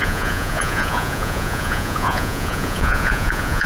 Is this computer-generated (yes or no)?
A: yes